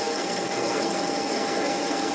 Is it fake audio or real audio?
fake